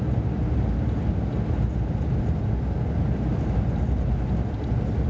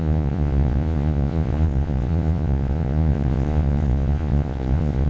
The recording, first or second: first